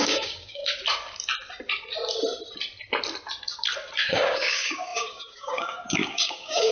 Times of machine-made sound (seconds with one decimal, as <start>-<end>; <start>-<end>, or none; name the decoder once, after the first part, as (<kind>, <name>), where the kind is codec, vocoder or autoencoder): 0.0-0.6 (codec, DAC); 4.1-6.7